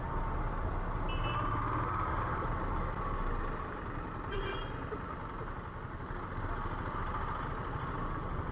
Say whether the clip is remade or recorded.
recorded